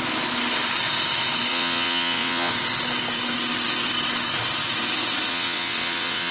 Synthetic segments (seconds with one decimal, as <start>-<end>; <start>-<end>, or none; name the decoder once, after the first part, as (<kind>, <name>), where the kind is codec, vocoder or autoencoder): 1.5-2.5 (vocoder, WaveNeXt); 5.3-6.3